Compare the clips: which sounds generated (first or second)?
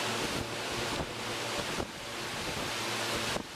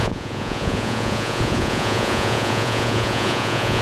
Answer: second